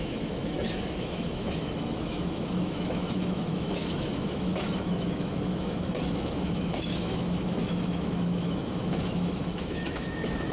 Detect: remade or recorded remade